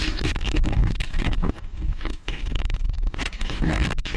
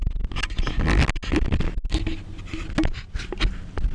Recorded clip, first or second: second